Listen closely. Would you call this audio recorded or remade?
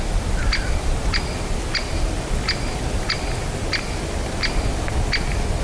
recorded